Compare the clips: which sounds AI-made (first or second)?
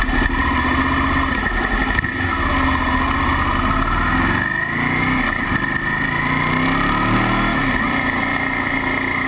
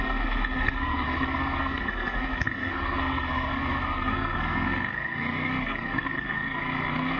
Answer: second